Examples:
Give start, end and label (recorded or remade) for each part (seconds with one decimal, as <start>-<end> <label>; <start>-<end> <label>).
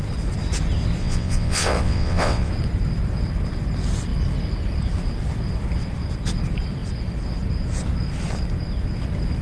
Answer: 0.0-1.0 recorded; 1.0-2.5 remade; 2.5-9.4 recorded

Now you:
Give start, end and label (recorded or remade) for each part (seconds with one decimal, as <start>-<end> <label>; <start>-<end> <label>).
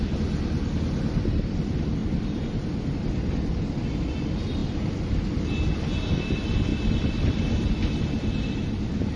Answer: 0.0-2.0 recorded; 2.0-2.9 remade; 2.9-6.7 recorded; 6.7-9.2 remade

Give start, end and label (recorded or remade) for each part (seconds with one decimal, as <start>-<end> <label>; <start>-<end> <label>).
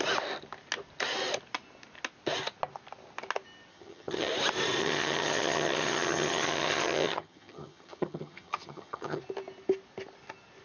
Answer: 0.0-3.7 recorded; 3.7-4.3 remade; 4.3-4.8 recorded; 4.8-9.2 remade; 9.2-10.6 recorded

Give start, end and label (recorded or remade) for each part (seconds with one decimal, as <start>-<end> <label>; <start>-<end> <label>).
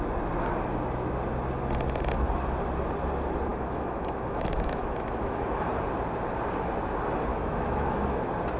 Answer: 0.0-3.5 recorded; 3.5-5.7 remade; 5.7-7.3 recorded; 7.3-8.2 remade; 8.2-8.6 recorded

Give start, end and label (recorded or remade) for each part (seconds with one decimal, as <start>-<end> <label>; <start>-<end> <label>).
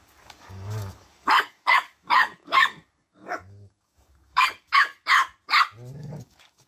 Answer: 0.0-5.2 remade; 5.2-6.0 recorded; 6.0-6.7 remade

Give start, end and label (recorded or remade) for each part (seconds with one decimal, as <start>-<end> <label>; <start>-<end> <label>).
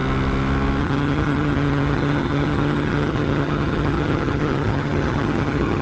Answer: 0.0-0.8 recorded; 0.8-5.8 remade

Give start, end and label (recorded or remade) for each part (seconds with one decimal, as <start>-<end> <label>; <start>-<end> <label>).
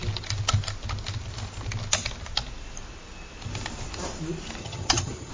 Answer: 0.0-4.6 recorded; 4.6-5.3 remade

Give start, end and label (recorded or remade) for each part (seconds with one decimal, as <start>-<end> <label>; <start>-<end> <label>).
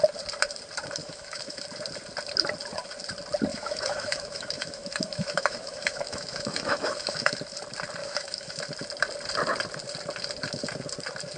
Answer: 0.0-1.0 recorded; 1.0-1.6 remade; 1.6-3.5 recorded; 3.5-7.4 remade; 7.4-8.0 recorded; 8.0-8.6 remade; 8.6-11.4 recorded